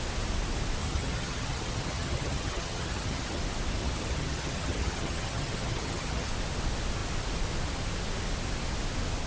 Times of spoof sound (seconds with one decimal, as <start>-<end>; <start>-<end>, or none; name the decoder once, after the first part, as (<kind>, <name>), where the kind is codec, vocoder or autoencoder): 0.8-3.4 (vocoder, HiFi-GAN); 3.8-6.3